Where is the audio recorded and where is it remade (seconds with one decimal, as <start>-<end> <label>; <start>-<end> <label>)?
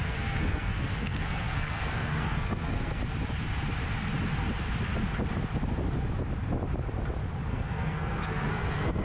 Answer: 0.0-3.0 remade; 3.0-7.5 recorded; 7.5-9.0 remade